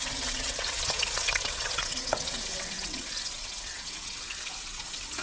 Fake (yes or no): yes